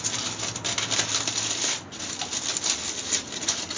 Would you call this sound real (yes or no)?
yes